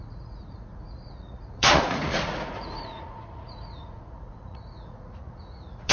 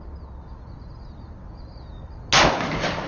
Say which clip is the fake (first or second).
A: first